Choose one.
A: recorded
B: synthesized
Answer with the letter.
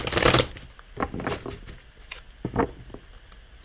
A